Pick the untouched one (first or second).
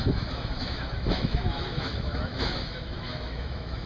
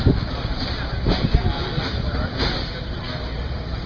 second